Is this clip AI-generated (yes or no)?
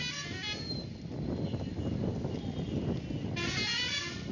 no